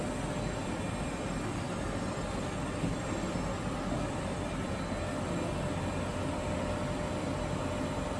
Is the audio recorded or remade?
recorded